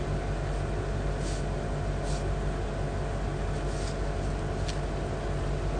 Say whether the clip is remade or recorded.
recorded